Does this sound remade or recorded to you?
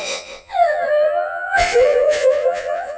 remade